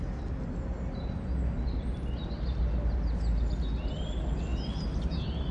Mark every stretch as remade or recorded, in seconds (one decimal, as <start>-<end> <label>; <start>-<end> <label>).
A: 0.0-5.5 recorded